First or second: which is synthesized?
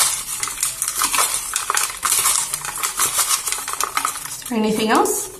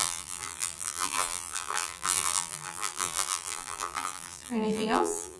second